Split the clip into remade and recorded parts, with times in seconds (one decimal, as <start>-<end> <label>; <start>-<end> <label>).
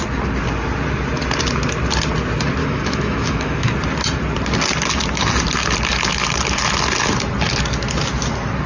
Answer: 0.0-2.6 recorded; 2.6-3.7 remade; 3.7-8.7 recorded